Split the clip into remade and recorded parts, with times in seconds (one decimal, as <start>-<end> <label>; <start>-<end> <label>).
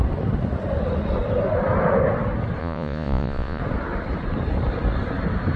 0.0-2.6 recorded; 2.6-3.6 remade; 3.6-5.6 recorded